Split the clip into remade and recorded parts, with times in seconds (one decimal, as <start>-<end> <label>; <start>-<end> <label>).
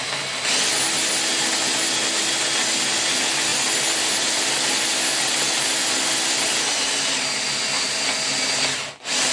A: 0.0-9.3 recorded